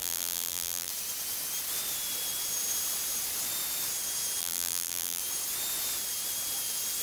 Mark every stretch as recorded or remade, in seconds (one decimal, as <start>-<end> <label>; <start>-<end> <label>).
0.0-0.9 remade; 0.9-4.4 recorded; 4.4-5.2 remade; 5.2-7.0 recorded